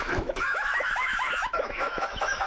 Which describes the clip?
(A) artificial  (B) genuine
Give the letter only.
A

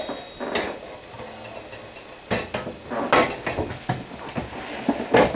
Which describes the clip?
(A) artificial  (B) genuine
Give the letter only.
B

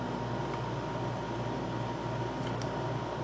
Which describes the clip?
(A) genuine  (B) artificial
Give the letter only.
A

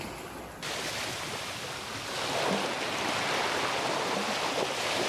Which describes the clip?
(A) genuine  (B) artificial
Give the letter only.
A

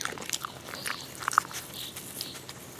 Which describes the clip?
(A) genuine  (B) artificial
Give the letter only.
A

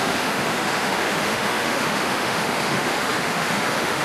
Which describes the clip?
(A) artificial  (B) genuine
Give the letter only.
A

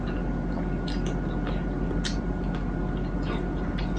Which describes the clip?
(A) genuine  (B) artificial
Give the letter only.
A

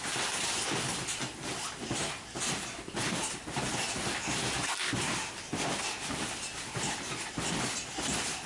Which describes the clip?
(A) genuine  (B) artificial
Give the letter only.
A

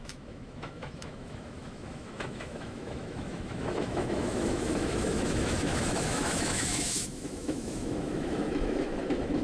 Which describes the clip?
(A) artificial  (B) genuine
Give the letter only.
A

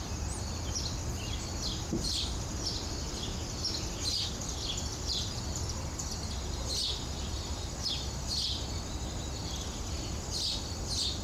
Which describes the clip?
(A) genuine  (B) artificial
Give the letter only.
A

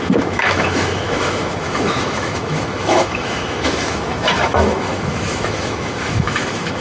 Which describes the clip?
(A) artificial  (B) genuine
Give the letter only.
A